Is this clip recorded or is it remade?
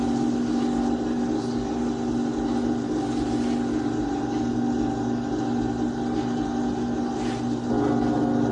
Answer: recorded